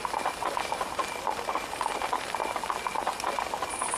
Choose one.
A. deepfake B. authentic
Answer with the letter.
B